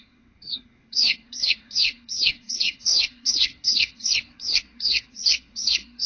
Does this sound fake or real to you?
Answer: fake